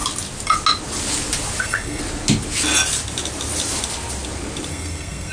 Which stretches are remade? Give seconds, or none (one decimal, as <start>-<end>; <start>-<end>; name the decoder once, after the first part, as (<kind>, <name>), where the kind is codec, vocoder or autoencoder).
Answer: 1.6-2.0 (codec, SNAC); 4.7-5.3